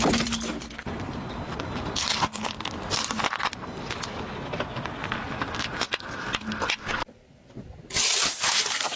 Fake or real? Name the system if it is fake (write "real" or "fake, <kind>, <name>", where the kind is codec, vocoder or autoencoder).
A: real